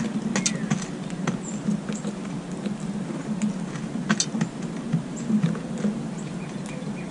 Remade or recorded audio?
recorded